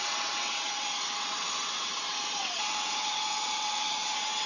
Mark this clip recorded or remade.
remade